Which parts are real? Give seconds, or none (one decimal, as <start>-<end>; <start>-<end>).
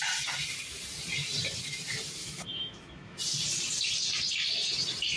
0.0-2.2; 3.2-5.2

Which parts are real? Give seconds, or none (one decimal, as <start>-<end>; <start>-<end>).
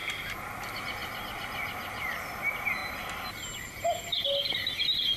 0.0-5.2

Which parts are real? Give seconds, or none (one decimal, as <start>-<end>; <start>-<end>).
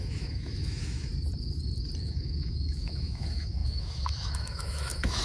1.1-2.0